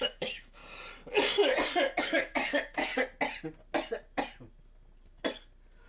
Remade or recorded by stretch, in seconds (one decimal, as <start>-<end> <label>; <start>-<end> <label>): 0.0-0.6 remade; 0.6-2.0 recorded; 2.0-2.9 remade; 2.9-5.9 recorded